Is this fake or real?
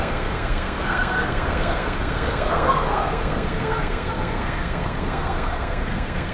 fake